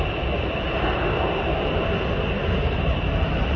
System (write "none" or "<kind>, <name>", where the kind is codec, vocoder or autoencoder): none